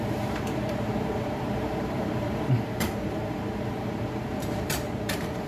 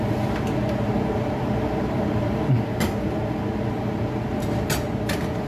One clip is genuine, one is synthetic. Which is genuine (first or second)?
second